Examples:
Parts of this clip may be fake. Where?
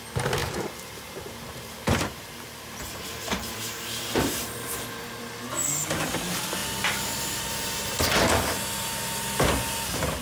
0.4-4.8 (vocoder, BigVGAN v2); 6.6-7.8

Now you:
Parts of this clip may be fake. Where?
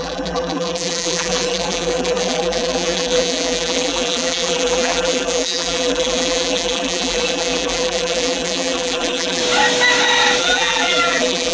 0.0-9.4 (vocoder, BigVGAN v2); 10.4-11.5